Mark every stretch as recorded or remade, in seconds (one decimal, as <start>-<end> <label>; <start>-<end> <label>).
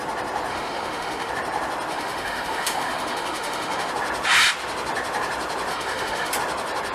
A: 0.0-0.5 recorded; 0.5-1.3 remade; 1.3-1.9 recorded; 1.9-3.9 remade; 3.9-5.7 recorded; 5.7-6.3 remade; 6.3-6.9 recorded